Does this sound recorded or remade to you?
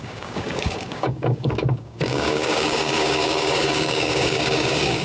remade